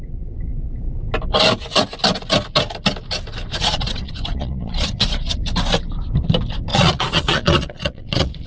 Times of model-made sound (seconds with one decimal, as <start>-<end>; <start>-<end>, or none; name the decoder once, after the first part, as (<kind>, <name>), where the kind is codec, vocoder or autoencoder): 3.5-5.4 (vocoder, Vocos); 6.7-8.5